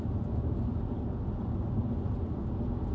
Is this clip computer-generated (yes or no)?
no